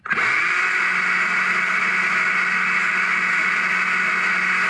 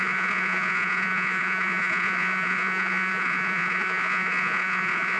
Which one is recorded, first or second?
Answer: first